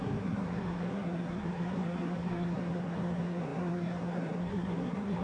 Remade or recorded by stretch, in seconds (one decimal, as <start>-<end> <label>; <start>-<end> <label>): 0.0-5.2 remade